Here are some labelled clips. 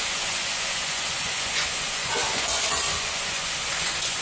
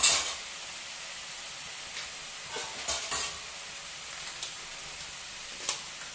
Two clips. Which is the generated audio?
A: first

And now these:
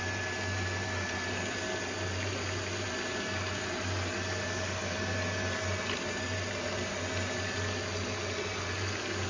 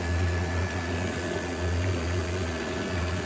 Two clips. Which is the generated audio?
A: second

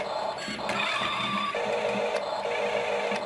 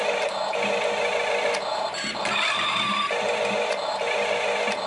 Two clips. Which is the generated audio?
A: second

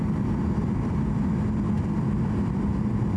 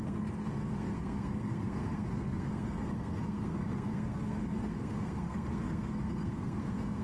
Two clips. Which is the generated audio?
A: second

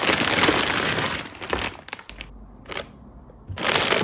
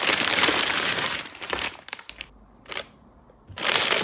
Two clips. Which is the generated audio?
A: second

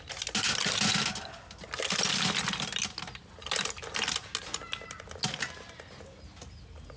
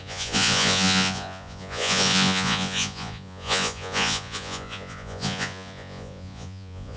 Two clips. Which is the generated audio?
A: second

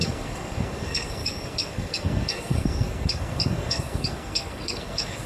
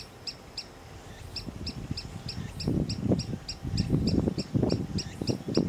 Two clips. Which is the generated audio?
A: first